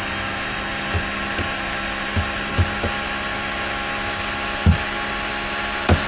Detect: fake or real real